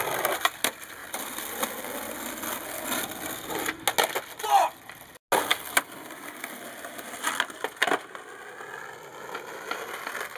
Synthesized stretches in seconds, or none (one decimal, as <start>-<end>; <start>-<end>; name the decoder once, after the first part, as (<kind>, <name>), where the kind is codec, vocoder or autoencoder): 1.0-1.7 (vocoder, BigVGAN v2)